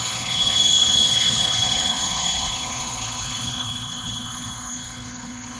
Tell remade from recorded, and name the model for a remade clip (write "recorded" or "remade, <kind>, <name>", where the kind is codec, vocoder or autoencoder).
remade, codec, HILCodec